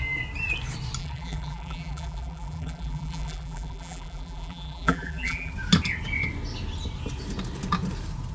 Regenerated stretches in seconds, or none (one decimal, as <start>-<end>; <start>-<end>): 1.0-5.5